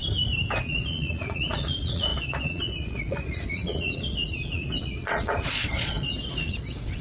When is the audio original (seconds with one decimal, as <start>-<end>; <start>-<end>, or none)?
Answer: 0.0-0.6